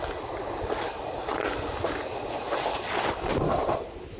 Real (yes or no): yes